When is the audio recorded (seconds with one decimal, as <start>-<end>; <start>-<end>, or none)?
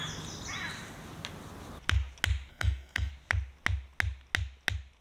0.0-2.5; 3.1-5.0